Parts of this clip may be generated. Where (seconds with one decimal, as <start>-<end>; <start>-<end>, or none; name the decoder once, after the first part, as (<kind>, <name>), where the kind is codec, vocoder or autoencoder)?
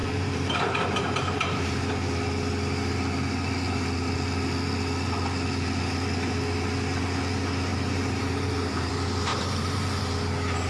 0.0-1.8 (vocoder, BigVGAN v2); 7.7-8.9; 9.3-10.0